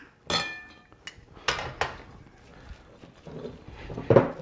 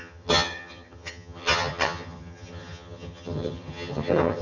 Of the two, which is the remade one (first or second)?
second